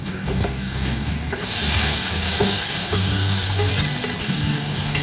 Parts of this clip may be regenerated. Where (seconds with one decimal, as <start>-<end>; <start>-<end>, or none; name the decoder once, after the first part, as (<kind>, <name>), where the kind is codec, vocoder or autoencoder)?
0.0-3.7 (codec, DAC); 4.2-5.0

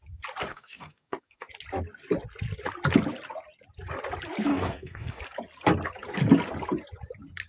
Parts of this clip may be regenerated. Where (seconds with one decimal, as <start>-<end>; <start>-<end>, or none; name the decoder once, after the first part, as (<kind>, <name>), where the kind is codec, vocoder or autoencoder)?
0.5-1.5 (codec, DAC); 4.5-5.2

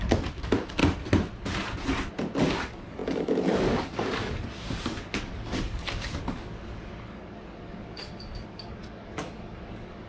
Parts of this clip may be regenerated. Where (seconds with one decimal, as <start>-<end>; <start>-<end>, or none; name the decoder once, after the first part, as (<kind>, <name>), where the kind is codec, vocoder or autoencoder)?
0.0-0.8 (codec, DAC); 2.4-10.1

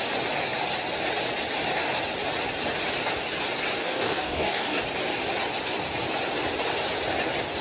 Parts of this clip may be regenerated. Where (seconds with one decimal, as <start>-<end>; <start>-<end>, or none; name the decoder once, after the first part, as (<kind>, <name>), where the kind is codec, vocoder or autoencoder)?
3.8-4.8 (codec, DAC)